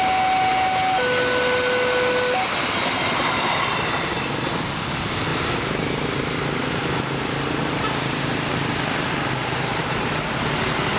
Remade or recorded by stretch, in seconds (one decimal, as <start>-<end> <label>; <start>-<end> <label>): 0.0-5.3 recorded; 5.3-9.8 remade; 9.8-11.0 recorded